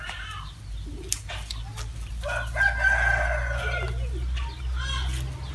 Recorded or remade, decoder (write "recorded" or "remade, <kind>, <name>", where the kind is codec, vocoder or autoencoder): recorded